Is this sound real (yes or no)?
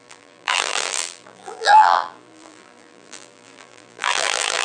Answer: no